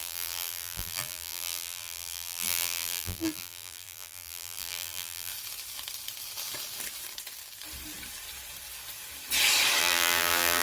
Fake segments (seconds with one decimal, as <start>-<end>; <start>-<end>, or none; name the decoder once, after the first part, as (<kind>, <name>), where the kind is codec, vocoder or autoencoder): 0.0-5.3 (vocoder, BigVGAN v2); 9.8-10.6